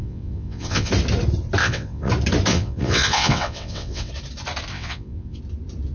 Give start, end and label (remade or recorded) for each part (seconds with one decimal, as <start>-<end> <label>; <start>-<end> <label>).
0.0-0.9 remade; 0.9-1.6 recorded; 1.6-2.1 remade; 2.1-2.5 recorded; 2.5-4.1 remade; 4.1-4.7 recorded; 4.7-5.4 remade; 5.4-5.9 recorded